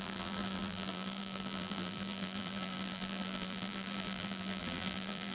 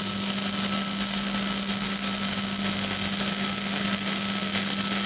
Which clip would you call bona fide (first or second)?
second